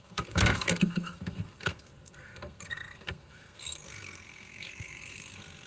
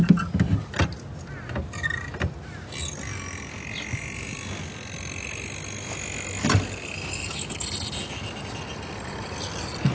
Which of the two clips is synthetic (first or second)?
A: first